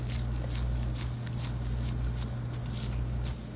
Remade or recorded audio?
recorded